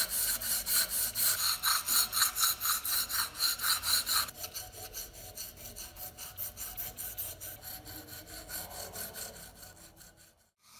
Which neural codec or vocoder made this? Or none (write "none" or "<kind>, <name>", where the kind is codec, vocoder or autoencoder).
none